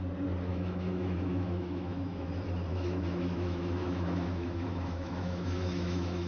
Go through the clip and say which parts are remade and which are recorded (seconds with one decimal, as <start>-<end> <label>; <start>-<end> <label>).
0.0-0.5 recorded; 0.5-2.3 remade; 2.3-2.7 recorded; 2.7-6.3 remade